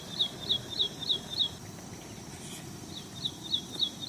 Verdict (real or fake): real